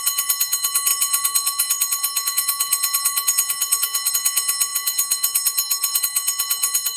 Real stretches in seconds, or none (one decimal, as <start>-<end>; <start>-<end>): none